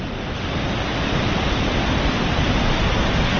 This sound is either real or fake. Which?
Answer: real